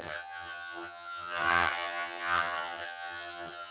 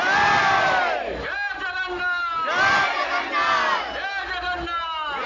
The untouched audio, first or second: second